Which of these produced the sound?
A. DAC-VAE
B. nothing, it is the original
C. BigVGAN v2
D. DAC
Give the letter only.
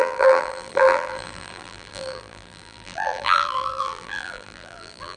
C